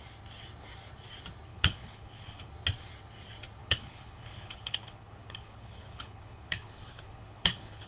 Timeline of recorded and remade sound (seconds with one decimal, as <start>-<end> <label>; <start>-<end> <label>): 0.0-1.5 recorded; 1.5-2.5 remade; 2.5-3.6 recorded; 3.6-7.9 remade

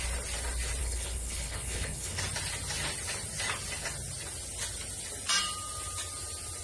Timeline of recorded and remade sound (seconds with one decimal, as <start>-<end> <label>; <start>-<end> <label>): 0.0-0.8 recorded; 0.8-2.2 remade; 2.2-6.6 recorded

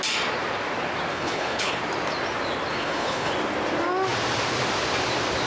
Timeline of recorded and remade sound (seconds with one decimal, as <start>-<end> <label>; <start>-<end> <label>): 0.0-1.1 recorded; 1.1-1.8 remade; 1.8-2.7 recorded; 2.7-3.3 remade; 3.3-5.5 recorded

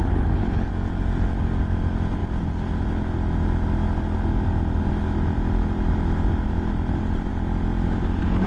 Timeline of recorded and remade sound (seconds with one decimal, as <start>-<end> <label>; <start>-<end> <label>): 0.0-0.7 remade; 0.7-8.5 recorded

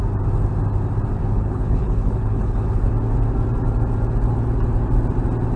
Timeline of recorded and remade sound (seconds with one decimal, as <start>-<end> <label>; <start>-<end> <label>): 0.0-1.2 recorded; 1.2-2.9 remade; 2.9-5.6 recorded

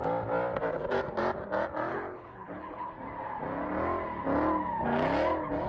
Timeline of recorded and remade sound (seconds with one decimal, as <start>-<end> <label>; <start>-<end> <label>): 0.0-1.9 recorded; 1.9-2.9 remade; 2.9-5.7 recorded